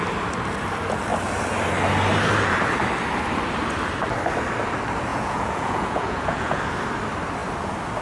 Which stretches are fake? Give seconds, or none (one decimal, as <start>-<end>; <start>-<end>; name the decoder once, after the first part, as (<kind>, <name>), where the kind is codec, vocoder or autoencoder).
5.1-6.6 (vocoder, Vocos)